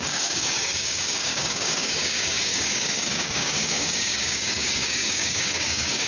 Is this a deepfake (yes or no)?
yes